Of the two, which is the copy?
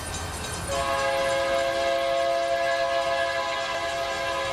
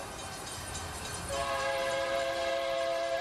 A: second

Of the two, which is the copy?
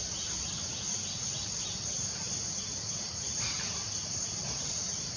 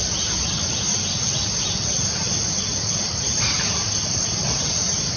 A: second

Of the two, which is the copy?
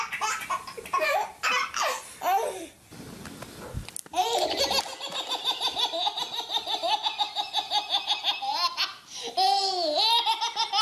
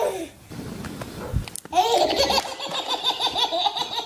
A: second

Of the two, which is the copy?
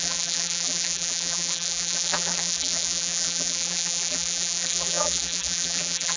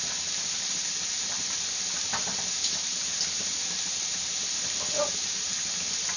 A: first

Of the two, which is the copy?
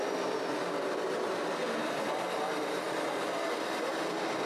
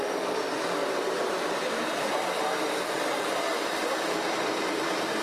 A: second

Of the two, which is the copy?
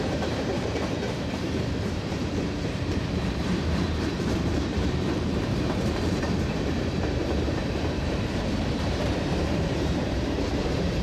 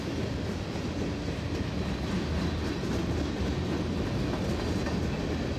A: first